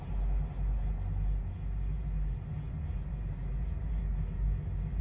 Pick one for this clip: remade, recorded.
recorded